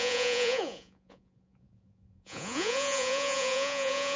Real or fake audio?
fake